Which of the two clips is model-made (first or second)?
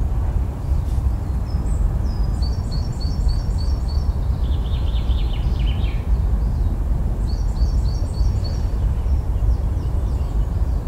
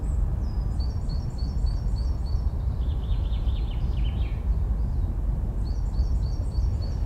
first